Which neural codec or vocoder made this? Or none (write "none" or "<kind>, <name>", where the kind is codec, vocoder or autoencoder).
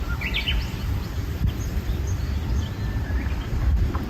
none